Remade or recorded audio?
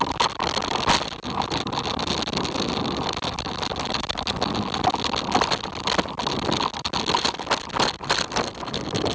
recorded